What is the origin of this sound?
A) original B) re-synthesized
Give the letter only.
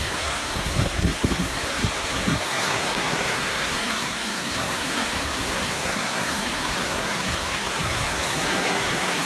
B